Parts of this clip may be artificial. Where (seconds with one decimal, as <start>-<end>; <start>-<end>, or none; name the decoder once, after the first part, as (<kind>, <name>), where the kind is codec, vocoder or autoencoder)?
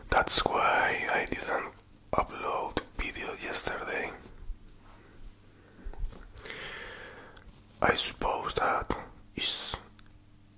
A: 0.7-1.9 (autoencoder, DAC-VAE)